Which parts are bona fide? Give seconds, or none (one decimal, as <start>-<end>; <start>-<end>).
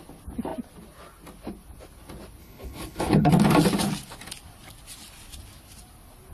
0.0-2.4; 3.3-6.3